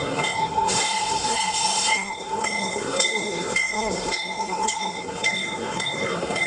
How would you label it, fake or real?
fake